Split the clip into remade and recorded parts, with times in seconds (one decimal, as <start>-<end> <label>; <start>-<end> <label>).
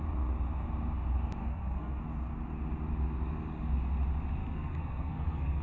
0.0-1.4 recorded; 1.4-2.0 remade; 2.0-4.4 recorded; 4.4-5.6 remade